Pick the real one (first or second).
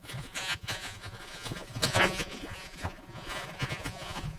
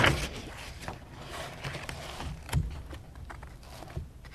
second